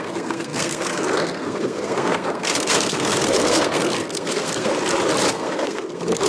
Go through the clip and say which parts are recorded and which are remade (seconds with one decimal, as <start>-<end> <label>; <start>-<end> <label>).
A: 0.0-4.7 remade; 4.7-5.3 recorded; 5.3-6.3 remade